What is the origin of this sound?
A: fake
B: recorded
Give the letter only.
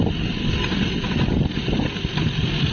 B